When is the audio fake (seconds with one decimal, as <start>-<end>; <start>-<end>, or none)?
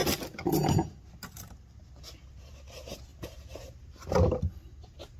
2.3-5.2